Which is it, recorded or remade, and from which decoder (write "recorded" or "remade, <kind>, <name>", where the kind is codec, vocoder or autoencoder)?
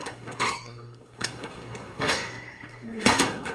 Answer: remade, codec, SNAC